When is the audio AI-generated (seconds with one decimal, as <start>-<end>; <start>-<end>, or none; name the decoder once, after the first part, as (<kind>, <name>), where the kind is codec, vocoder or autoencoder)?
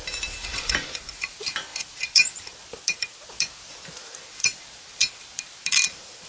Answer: 0.5-1.1 (vocoder, Vocos)